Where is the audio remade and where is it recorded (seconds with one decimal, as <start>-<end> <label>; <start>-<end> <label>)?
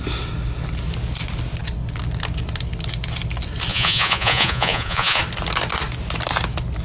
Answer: 0.0-3.7 recorded; 3.7-5.2 remade; 5.2-6.8 recorded